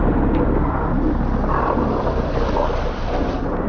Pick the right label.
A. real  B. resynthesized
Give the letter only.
B